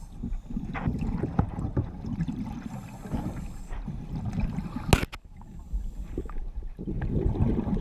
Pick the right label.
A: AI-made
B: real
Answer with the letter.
B